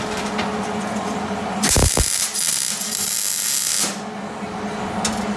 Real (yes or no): yes